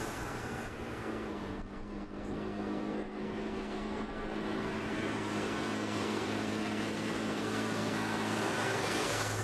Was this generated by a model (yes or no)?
yes